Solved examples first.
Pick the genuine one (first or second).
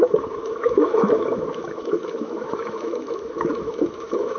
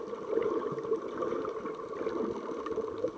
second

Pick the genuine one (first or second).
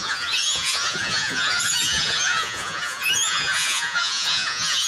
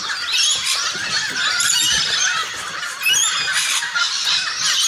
second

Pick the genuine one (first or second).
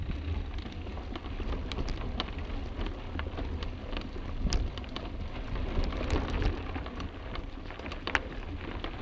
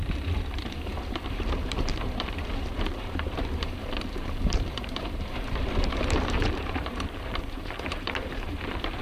first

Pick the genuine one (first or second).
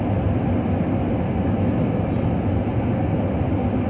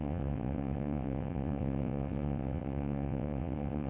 first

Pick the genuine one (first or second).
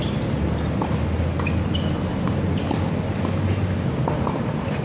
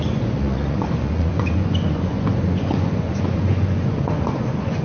first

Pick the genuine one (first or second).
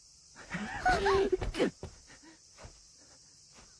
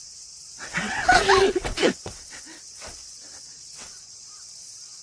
first